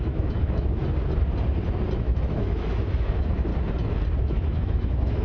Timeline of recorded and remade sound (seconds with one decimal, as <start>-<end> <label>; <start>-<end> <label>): 0.0-0.8 remade; 0.8-2.0 recorded; 2.0-3.5 remade; 3.5-4.2 recorded; 4.2-5.2 remade

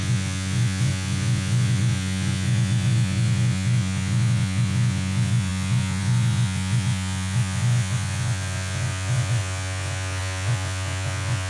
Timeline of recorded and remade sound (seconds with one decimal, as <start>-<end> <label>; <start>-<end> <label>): 0.0-11.5 remade